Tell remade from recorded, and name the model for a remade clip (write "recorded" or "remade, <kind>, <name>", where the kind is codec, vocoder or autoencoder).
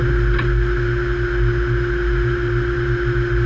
recorded